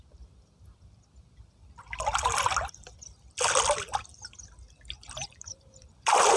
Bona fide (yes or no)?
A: yes